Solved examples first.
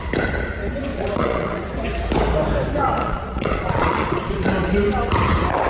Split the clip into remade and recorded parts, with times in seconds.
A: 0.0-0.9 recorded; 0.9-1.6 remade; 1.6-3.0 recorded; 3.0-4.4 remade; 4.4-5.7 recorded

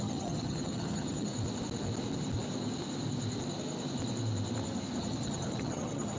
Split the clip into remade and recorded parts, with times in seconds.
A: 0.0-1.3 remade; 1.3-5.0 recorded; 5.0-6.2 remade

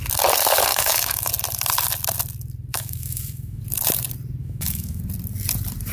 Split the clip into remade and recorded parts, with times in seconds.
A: 0.0-0.7 recorded; 0.7-1.3 remade; 1.3-2.7 recorded; 2.7-3.6 remade; 3.6-4.4 recorded; 4.4-5.0 remade; 5.0-5.9 recorded

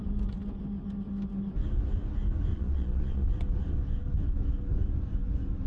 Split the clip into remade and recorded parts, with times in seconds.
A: 0.0-2.5 recorded; 2.5-3.3 remade; 3.3-5.7 recorded

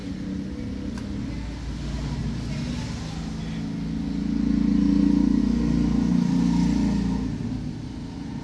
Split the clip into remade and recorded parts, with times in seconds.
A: 0.0-8.4 recorded

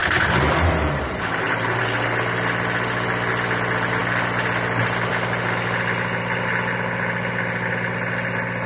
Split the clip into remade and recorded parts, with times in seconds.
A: 0.0-1.8 remade; 1.8-8.7 recorded

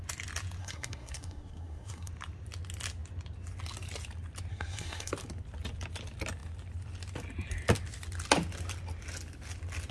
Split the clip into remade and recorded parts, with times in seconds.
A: 0.0-0.6 recorded; 0.6-2.1 remade; 2.1-4.5 recorded; 4.5-5.1 remade; 5.1-9.9 recorded

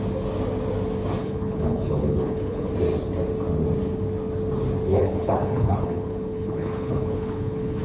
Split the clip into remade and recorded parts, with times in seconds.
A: 0.0-1.2 recorded; 1.2-2.7 remade; 2.7-4.9 recorded; 4.9-7.8 remade